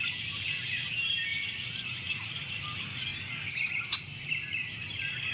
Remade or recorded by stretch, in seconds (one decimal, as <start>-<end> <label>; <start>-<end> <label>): 0.0-5.3 remade